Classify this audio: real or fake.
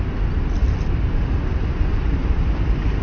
real